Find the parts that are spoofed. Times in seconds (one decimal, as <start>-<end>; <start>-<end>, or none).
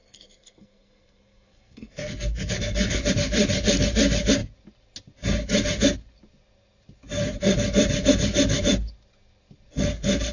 0.0-3.1